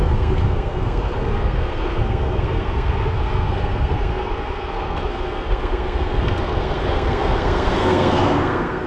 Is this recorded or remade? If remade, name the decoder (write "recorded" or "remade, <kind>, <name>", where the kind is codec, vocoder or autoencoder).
remade, codec, SNAC